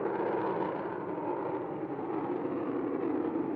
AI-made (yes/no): yes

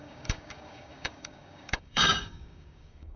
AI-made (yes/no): yes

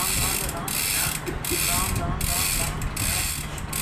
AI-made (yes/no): no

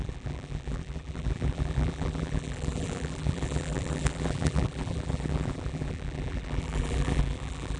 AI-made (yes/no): yes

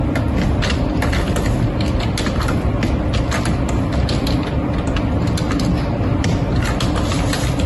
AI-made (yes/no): no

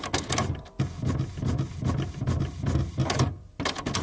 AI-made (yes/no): no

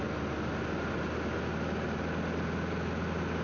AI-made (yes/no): no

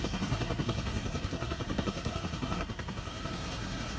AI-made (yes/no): yes